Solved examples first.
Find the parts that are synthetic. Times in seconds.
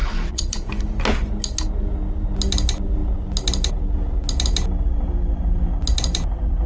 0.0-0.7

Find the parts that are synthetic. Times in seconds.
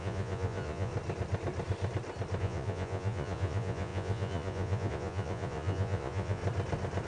0.0-0.9; 2.4-6.4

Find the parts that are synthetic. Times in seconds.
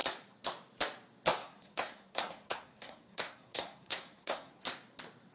1.4-4.6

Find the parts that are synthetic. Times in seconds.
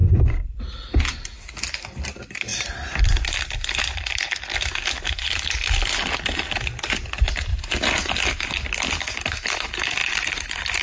0.0-0.6; 2.5-4.0; 10.0-10.8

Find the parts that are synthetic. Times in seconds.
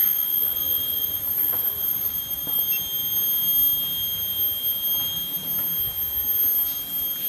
0.0-2.6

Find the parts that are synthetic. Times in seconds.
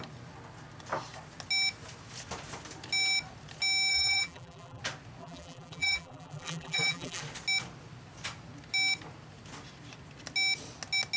3.9-4.8; 5.2-7.2